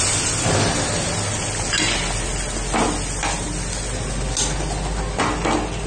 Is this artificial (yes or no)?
no